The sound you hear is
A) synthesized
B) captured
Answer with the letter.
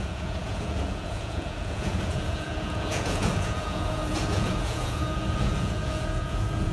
A